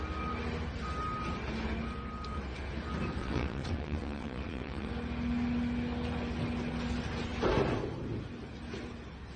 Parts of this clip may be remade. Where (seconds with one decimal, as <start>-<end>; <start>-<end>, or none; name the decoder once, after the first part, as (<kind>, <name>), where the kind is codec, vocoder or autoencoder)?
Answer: 3.2-4.9 (vocoder, WaveNeXt)

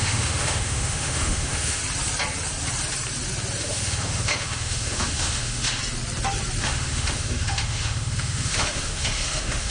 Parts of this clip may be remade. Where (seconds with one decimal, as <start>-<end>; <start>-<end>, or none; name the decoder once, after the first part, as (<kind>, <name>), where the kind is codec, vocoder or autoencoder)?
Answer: 0.0-1.8 (autoencoder, DAC-VAE); 3.6-5.8; 6.6-9.7

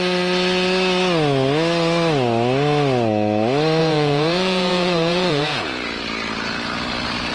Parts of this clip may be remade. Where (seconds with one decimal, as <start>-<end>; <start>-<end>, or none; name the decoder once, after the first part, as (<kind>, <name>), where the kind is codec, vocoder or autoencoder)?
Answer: 3.8-6.0 (vocoder, Vocos)

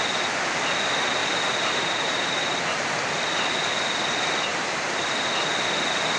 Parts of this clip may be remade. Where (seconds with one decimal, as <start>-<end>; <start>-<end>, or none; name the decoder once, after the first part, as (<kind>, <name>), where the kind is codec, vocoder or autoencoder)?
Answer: 1.2-2.9 (vocoder, BigVGAN v2); 4.5-5.3

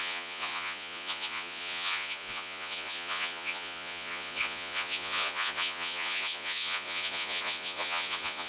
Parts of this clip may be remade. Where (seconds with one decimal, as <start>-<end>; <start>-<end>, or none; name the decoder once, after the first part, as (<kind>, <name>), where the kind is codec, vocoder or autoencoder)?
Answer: 0.0-8.5 (vocoder, Vocos)

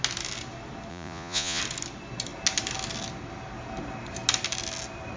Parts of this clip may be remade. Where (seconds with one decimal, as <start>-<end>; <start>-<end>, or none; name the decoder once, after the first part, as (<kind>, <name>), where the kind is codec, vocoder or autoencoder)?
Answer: 0.9-1.6 (vocoder, Vocos)